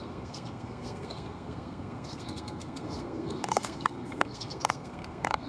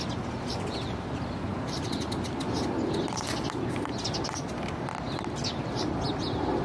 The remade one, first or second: first